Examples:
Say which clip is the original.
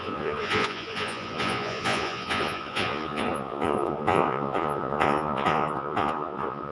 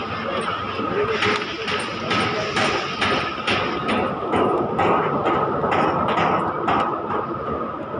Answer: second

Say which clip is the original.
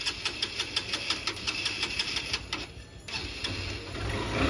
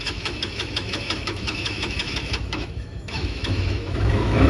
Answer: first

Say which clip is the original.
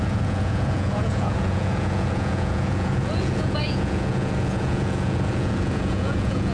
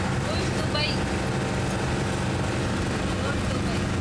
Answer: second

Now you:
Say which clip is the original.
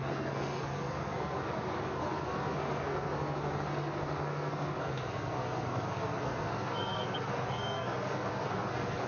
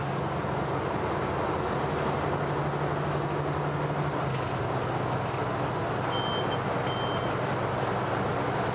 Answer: second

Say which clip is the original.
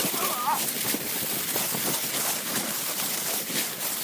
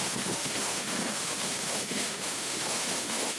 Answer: first